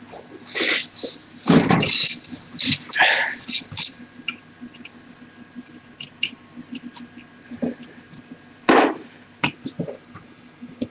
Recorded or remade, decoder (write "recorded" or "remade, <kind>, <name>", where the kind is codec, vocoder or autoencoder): recorded